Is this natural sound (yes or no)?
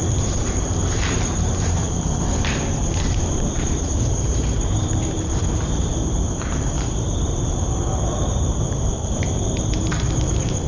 no